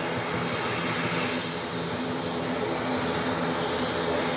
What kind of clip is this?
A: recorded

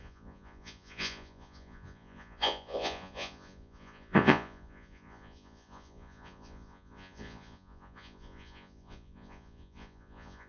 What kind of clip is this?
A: remade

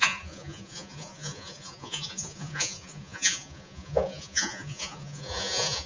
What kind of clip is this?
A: remade